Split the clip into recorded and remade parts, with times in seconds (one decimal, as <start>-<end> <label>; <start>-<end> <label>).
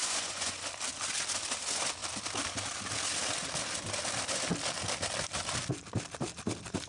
0.0-0.6 remade; 0.6-6.9 recorded